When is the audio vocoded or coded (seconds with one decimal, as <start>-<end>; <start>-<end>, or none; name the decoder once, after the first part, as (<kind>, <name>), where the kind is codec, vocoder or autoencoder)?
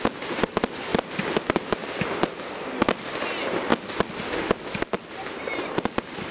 0.0-0.9 (vocoder, BigVGAN v2); 2.8-3.7; 5.3-6.3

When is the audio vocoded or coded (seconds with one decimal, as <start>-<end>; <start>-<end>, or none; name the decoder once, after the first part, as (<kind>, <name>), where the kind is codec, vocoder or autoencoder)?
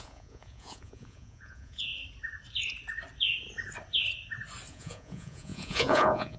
0.0-1.9 (vocoder, Vocos); 4.7-6.4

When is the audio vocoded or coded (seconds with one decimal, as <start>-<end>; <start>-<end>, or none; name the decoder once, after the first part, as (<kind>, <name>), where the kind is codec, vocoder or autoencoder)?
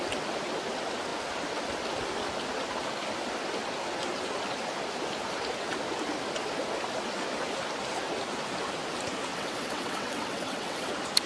9.3-10.9 (vocoder, WaveNeXt)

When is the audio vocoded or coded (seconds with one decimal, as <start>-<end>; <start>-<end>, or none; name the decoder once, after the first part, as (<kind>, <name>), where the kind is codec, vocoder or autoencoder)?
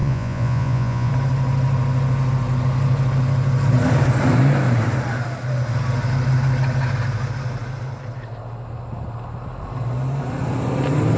0.0-1.1 (vocoder, Vocos)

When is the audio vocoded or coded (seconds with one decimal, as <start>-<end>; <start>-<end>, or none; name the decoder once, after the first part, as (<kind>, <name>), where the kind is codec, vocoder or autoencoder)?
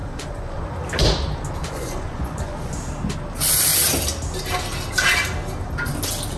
0.0-0.7 (vocoder, Vocos); 1.6-2.7